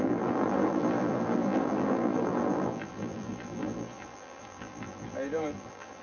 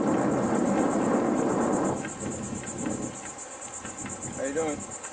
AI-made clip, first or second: first